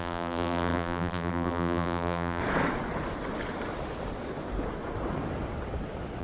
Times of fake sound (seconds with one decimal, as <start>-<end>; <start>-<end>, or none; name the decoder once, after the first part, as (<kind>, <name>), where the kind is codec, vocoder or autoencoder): 0.0-2.4 (vocoder, BigVGAN v2)